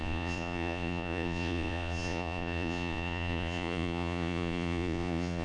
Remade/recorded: remade